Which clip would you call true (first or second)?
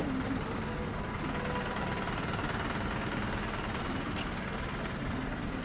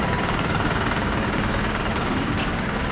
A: first